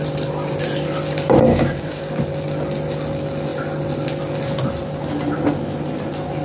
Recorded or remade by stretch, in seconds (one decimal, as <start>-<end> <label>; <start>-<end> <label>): 0.0-1.5 recorded; 1.5-2.1 remade; 2.1-6.4 recorded

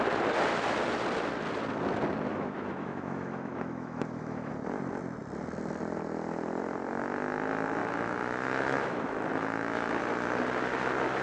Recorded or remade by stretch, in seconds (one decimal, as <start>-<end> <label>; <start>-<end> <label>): 0.0-2.3 recorded; 2.3-4.5 remade; 4.5-7.8 recorded; 7.8-10.0 remade; 10.0-11.2 recorded

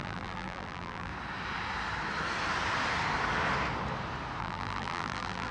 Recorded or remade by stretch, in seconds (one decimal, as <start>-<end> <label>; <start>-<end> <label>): 0.0-1.1 remade; 1.1-4.4 recorded; 4.4-5.5 remade

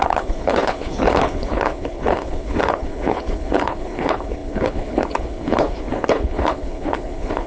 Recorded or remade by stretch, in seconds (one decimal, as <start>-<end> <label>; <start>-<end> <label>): 0.0-7.5 remade

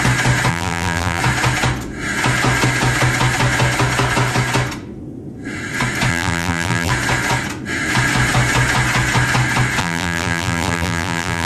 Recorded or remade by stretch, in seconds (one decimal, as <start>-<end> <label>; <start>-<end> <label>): 0.0-0.5 recorded; 0.5-1.2 remade; 1.2-6.1 recorded; 6.1-6.9 remade; 6.9-9.8 recorded; 9.8-11.5 remade